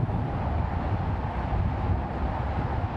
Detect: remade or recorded recorded